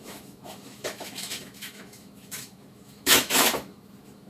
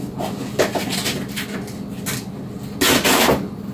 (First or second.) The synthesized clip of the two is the first